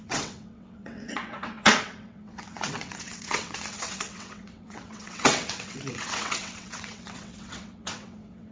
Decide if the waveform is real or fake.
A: fake